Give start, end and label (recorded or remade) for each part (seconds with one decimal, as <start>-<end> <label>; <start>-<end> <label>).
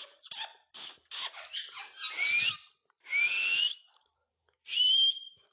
0.0-3.4 recorded; 3.4-5.5 remade